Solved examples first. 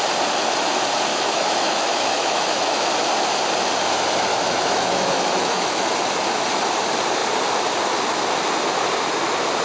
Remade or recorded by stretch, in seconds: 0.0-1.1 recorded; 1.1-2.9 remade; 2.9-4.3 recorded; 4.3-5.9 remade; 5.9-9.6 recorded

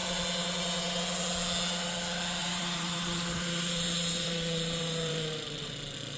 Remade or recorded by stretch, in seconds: 0.0-2.4 recorded; 2.4-5.7 remade; 5.7-6.2 recorded

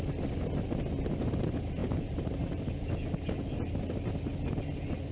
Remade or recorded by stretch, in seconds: 0.0-1.8 recorded; 1.8-2.9 remade; 2.9-5.1 recorded

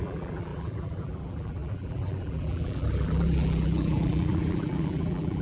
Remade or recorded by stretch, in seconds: 0.0-5.4 remade

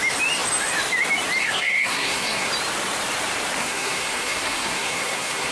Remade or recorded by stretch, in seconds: 0.0-1.4 recorded; 1.4-2.5 remade; 2.5-3.6 recorded; 3.6-5.5 remade

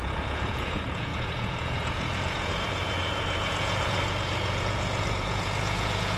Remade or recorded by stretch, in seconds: 0.0-6.2 remade